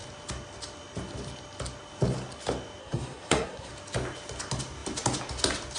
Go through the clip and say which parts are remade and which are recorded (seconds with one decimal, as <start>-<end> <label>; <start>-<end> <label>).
0.0-2.8 recorded; 2.8-3.7 remade; 3.7-5.8 recorded